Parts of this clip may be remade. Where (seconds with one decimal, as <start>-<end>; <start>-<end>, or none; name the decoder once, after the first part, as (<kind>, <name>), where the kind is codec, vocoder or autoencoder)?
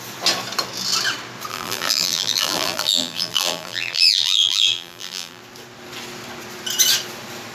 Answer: 1.5-5.4 (vocoder, BigVGAN v2)